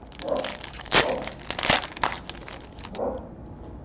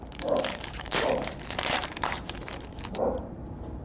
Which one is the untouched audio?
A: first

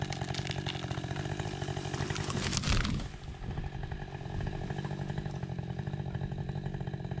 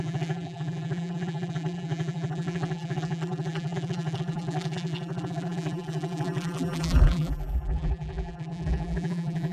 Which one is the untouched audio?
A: first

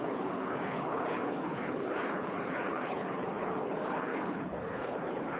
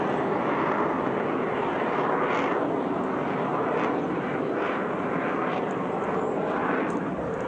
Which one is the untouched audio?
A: second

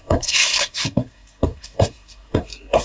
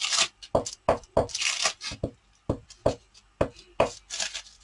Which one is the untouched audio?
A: second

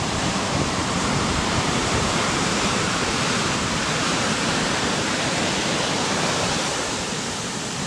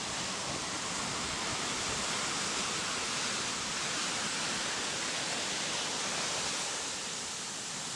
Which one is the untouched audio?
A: second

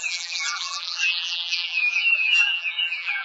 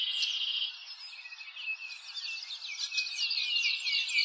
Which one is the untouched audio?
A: second